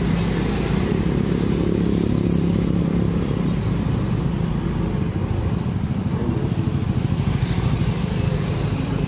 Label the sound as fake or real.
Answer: fake